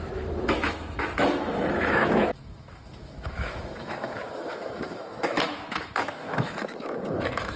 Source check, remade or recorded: remade